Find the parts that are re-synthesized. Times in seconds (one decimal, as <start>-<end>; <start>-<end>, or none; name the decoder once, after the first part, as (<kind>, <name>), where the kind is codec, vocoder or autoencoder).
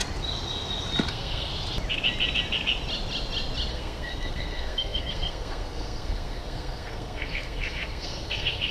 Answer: 1.1-1.5 (codec, SNAC); 3.7-8.7